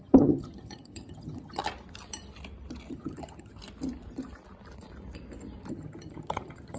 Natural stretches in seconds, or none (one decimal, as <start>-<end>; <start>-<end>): 1.6-2.9; 3.6-5.7